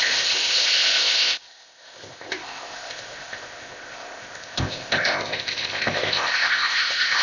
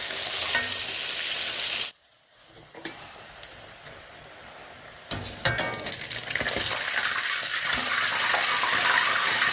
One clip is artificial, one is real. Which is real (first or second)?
second